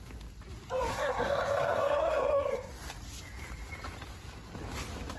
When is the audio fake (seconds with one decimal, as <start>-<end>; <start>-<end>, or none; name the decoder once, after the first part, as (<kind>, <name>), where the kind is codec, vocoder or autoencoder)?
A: 0.9-2.7 (codec, SNAC)